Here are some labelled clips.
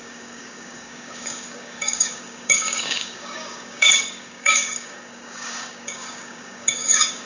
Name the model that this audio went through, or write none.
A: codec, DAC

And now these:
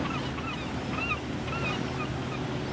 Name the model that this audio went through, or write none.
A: none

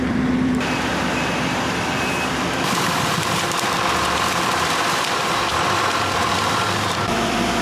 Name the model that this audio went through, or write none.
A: vocoder, BigVGAN v2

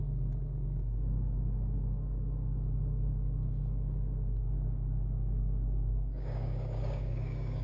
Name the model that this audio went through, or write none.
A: codec, DAC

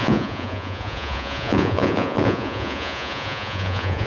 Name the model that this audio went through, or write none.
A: vocoder, Vocos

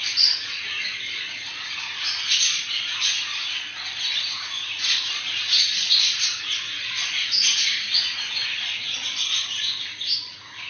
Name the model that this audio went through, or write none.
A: vocoder, Vocos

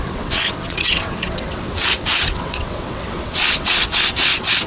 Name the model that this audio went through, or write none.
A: vocoder, WaveNeXt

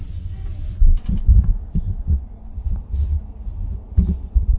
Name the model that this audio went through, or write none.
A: none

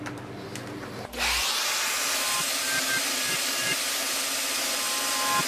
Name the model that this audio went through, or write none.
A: none